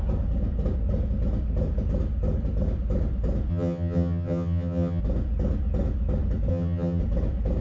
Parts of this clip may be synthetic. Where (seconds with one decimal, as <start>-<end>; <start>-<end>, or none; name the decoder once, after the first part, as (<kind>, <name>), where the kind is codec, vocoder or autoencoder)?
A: 3.5-5.0 (vocoder, HiFi-GAN); 6.5-7.0